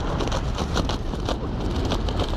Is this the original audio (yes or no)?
yes